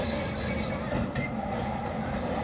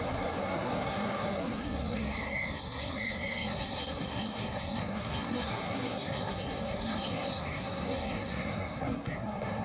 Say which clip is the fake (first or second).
second